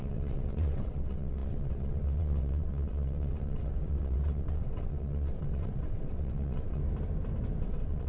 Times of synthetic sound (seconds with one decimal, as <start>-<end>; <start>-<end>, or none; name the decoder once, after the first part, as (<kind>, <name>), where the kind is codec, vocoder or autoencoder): 0.0-6.8 (vocoder, WaveNeXt); 7.6-8.1